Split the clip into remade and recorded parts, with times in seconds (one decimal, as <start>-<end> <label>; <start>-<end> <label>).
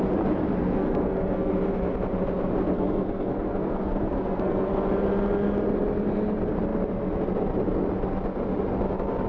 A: 0.0-0.6 recorded; 0.6-1.5 remade; 1.5-2.6 recorded; 2.6-4.7 remade; 4.7-9.3 recorded